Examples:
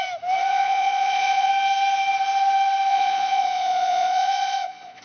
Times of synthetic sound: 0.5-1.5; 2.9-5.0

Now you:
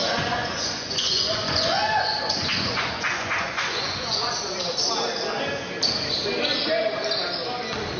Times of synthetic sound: 0.0-4.3